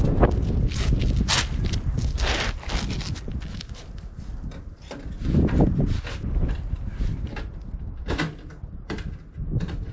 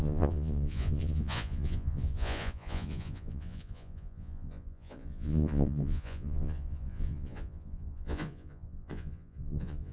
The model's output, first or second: second